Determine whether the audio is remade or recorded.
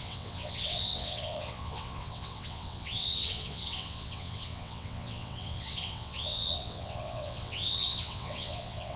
remade